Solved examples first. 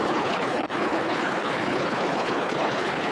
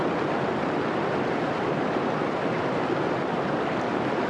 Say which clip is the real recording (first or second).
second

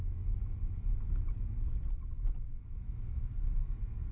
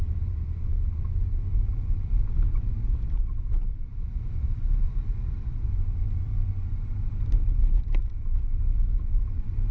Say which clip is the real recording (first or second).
first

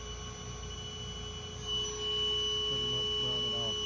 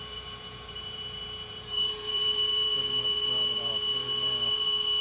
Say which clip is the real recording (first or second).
first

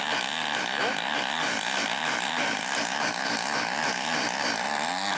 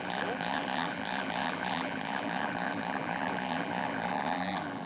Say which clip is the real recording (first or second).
first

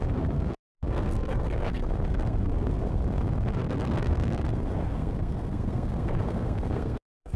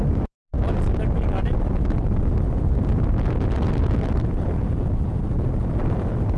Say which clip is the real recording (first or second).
second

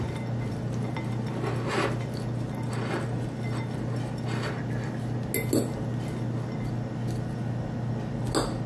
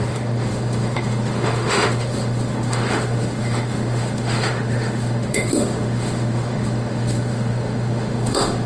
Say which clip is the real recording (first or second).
first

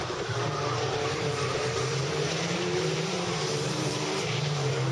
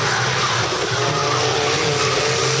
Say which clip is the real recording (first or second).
second